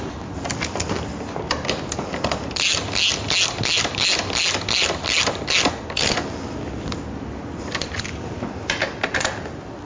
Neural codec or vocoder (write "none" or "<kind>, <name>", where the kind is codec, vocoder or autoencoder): none